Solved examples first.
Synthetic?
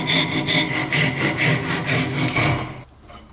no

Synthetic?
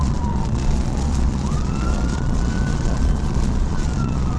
yes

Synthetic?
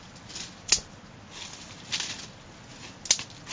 no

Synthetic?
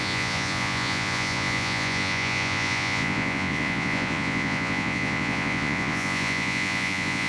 yes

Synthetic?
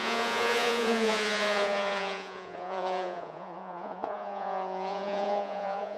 yes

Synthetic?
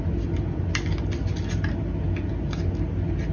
no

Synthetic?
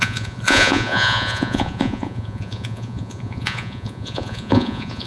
yes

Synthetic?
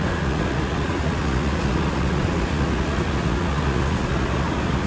yes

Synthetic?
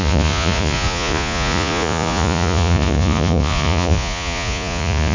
yes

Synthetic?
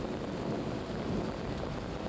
no